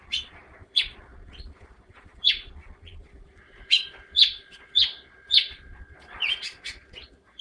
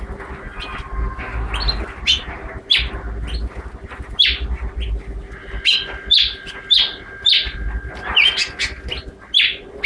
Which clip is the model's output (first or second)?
first